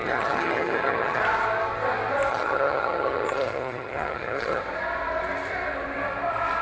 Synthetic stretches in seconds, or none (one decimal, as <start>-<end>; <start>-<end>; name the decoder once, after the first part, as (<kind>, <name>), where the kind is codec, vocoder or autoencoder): 0.0-1.2 (vocoder, HiFi-GAN); 2.3-4.6